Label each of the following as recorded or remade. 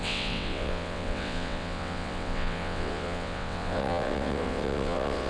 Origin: remade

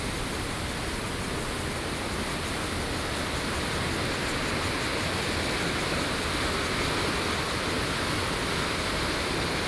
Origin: recorded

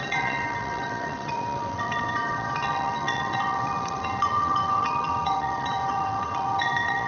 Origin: remade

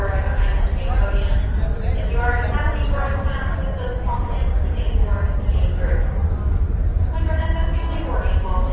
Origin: recorded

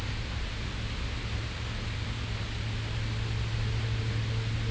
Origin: recorded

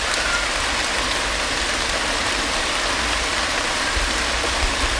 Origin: recorded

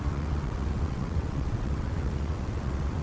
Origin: remade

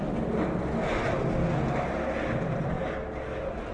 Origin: recorded